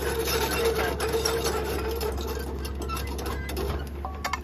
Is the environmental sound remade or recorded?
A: recorded